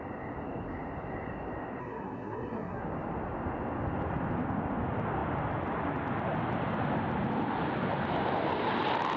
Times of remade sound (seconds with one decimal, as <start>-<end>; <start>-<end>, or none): 1.8-2.8

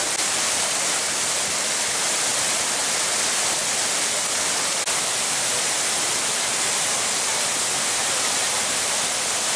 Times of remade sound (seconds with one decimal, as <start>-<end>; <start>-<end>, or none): none

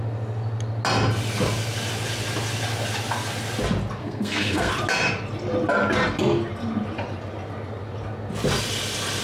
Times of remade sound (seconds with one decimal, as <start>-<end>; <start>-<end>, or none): 4.0-4.7